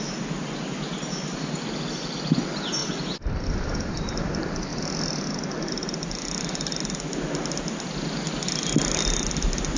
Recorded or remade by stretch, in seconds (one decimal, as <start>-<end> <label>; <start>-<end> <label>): 0.0-9.8 recorded